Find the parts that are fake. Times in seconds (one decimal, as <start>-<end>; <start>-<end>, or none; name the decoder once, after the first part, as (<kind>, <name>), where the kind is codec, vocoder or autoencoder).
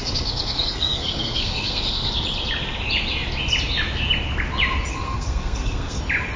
0.0-2.1 (codec, SNAC); 4.9-6.0